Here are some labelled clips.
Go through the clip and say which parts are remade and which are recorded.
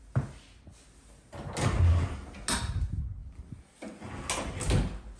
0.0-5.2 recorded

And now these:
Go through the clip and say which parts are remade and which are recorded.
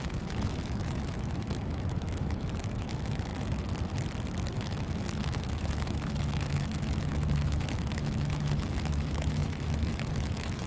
0.0-3.3 remade; 3.3-4.5 recorded; 4.5-10.7 remade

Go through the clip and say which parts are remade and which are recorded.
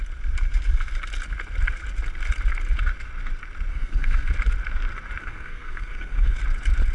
0.0-3.7 recorded; 3.7-4.3 remade; 4.3-5.2 recorded; 5.2-6.4 remade; 6.4-6.9 recorded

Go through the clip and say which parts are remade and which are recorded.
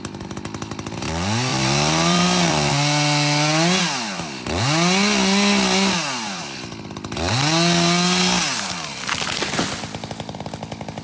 0.0-1.5 recorded; 1.5-2.7 remade; 2.7-11.0 recorded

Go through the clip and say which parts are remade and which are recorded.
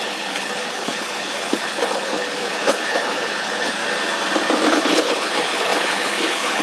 0.0-3.8 remade; 3.8-4.7 recorded; 4.7-6.6 remade